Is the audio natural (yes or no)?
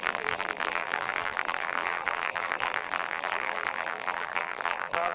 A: no